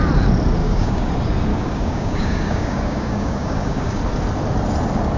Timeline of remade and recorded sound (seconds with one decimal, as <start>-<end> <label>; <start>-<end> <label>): 0.0-0.6 recorded; 0.6-1.1 remade; 1.1-1.5 recorded; 1.5-4.0 remade; 4.0-5.2 recorded